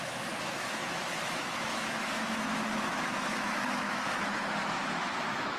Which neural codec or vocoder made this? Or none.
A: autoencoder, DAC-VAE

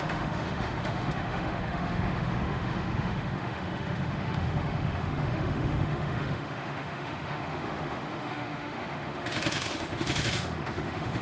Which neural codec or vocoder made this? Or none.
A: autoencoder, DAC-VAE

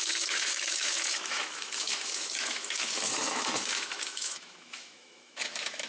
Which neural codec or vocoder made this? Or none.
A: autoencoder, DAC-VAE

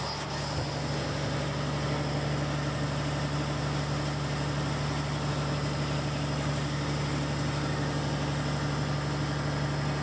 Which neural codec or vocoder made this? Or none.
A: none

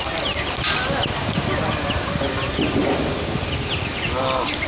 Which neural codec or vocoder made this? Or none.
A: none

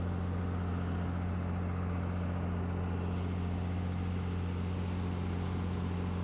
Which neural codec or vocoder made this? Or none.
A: none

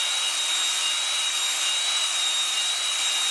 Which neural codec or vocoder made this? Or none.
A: none